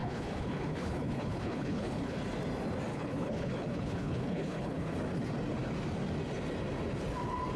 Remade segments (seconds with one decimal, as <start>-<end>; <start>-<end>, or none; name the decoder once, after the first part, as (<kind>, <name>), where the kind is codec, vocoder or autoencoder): 0.0-2.2 (codec, HILCodec); 2.9-4.9